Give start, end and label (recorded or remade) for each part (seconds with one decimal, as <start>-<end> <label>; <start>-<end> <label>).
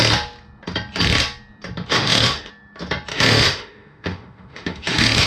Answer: 0.0-1.9 recorded; 1.9-2.5 remade; 2.5-3.1 recorded; 3.1-5.3 remade